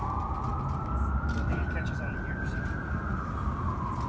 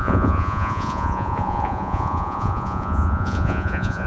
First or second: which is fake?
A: second